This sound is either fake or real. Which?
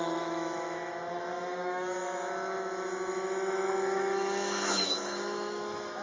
fake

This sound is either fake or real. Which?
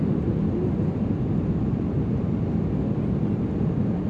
real